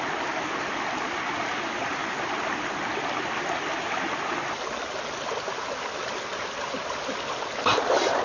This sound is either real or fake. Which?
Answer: real